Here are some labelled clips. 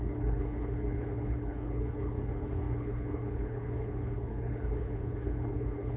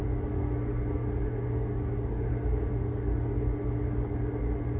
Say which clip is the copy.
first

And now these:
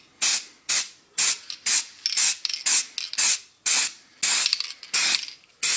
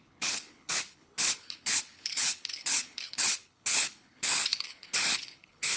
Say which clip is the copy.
second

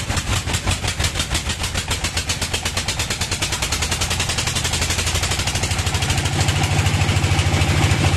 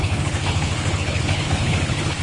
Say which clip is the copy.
second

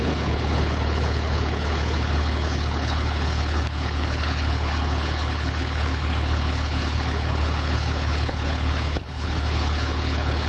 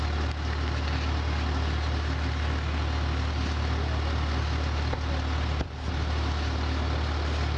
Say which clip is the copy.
first